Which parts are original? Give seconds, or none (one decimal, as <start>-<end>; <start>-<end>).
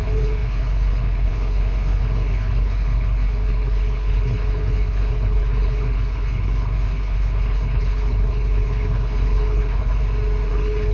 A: 10.0-10.5